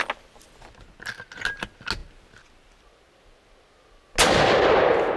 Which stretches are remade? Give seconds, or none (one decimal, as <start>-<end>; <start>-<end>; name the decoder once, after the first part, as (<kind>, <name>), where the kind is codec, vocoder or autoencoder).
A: none